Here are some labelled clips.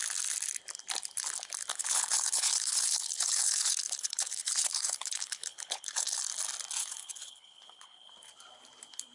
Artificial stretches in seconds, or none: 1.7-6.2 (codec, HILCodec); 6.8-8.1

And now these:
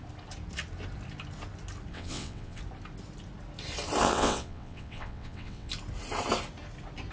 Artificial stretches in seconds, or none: 1.9-2.6 (vocoder, WaveNeXt); 4.0-5.7